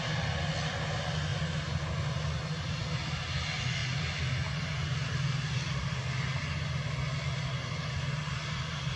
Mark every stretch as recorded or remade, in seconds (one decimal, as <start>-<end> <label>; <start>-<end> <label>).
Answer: 0.0-9.0 recorded